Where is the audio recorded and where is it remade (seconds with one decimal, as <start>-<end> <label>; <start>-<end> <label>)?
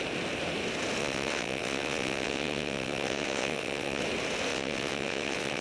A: 0.0-1.0 recorded; 1.0-4.0 remade; 4.0-4.5 recorded; 4.5-5.6 remade